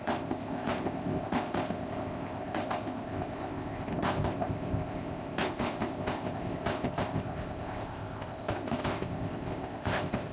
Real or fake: fake